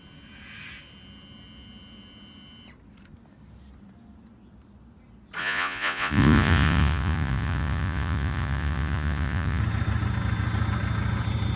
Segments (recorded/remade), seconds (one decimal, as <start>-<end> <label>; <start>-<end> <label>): 0.0-5.4 recorded; 5.4-9.6 remade; 9.6-11.6 recorded